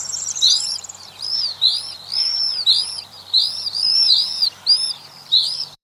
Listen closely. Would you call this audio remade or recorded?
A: remade